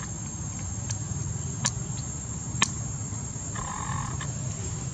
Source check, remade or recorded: recorded